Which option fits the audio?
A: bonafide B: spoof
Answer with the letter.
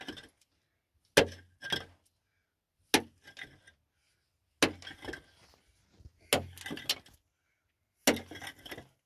A